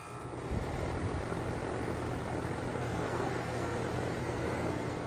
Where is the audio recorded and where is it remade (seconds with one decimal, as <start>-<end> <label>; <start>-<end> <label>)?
0.0-2.7 recorded; 2.7-3.8 remade; 3.8-4.2 recorded; 4.2-5.1 remade